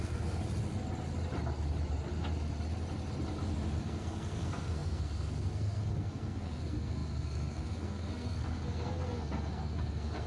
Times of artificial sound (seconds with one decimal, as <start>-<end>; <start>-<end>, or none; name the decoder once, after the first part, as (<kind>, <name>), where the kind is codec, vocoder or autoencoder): 0.0-0.4 (codec, SNAC); 3.8-10.3